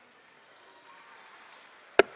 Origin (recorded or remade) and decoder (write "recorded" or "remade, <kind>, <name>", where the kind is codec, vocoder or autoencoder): recorded